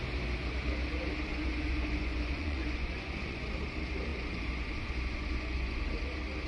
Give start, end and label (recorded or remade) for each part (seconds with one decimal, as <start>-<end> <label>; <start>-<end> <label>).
0.0-1.3 recorded; 1.3-3.5 remade; 3.5-4.1 recorded; 4.1-5.8 remade; 5.8-6.5 recorded